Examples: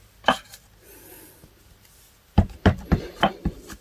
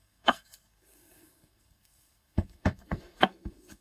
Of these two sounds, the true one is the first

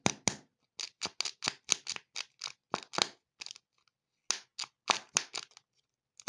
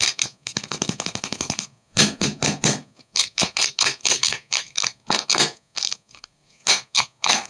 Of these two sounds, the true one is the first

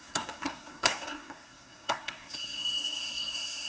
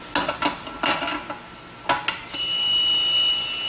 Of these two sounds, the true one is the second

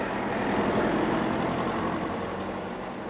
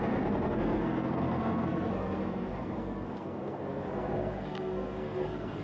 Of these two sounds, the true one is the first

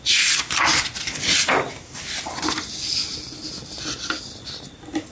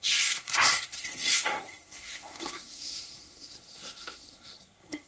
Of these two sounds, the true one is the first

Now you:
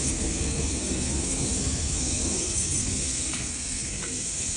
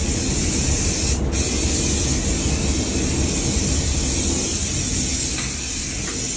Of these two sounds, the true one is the second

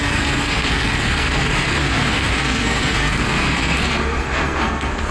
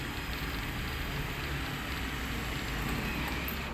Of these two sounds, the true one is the second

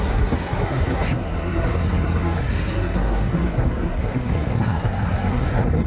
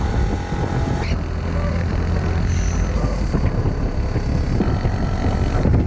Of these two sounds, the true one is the second